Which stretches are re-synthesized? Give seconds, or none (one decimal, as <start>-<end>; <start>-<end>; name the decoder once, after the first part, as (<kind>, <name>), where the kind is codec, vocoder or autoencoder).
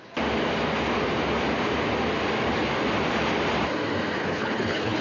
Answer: 4.2-5.0 (codec, HILCodec)